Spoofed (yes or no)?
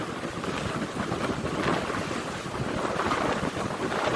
no